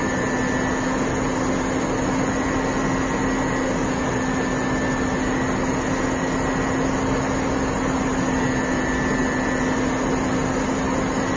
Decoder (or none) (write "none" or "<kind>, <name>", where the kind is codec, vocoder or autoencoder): none